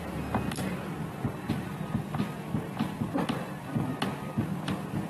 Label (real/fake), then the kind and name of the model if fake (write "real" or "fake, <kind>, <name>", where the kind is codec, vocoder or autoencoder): real